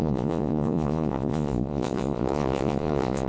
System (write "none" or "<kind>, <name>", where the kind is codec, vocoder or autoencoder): vocoder, Vocos